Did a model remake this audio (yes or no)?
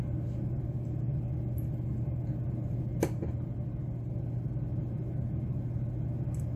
no